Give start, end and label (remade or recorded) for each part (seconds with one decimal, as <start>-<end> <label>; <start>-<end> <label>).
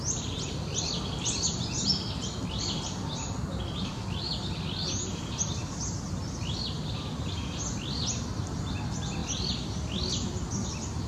0.0-11.1 recorded